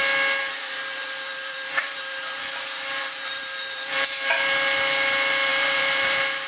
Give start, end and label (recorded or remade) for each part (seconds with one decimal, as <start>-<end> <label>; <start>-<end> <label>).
0.0-0.4 recorded; 0.4-4.3 remade; 4.3-5.5 recorded; 5.5-6.5 remade